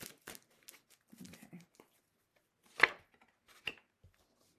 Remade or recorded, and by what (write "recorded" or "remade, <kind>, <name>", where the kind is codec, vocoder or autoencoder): recorded